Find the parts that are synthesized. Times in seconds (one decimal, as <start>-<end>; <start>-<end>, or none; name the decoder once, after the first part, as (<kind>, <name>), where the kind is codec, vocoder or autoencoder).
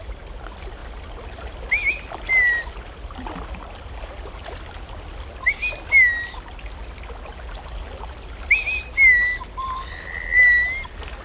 none